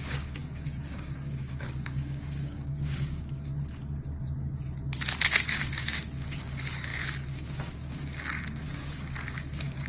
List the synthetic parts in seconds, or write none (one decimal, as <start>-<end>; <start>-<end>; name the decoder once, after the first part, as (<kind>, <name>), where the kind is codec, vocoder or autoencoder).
0.0-3.5 (codec, DAC); 5.2-9.9

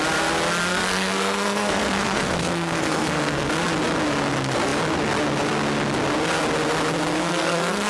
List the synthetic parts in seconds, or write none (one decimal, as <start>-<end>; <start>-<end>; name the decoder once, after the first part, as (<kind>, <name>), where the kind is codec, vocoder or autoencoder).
0.7-3.5 (codec, SNAC); 7.2-7.9

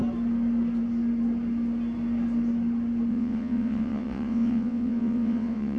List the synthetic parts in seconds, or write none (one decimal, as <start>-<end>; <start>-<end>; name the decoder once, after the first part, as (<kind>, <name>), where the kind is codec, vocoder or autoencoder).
3.1-5.8 (vocoder, WaveNeXt)

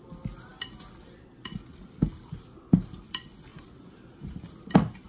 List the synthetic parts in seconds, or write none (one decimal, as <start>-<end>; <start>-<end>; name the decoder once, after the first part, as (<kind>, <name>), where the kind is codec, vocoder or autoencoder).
none